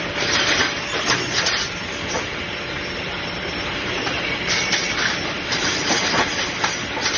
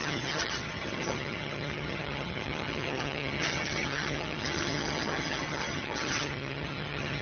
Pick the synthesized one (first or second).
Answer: second